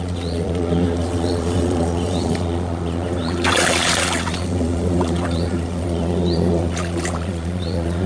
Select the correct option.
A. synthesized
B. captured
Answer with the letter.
A